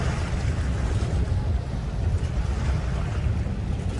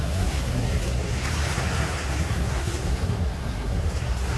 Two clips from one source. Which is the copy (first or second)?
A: second